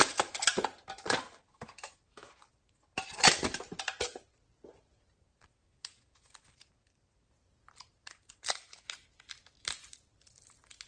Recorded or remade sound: recorded